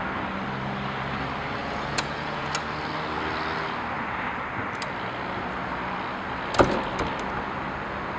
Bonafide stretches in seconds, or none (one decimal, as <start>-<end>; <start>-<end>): 0.0-1.6; 2.5-8.2